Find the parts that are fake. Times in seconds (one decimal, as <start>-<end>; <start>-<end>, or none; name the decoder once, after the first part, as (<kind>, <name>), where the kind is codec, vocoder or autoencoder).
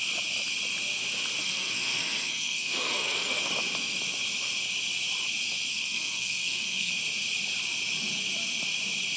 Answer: 1.4-3.5 (codec, SNAC); 5.7-6.9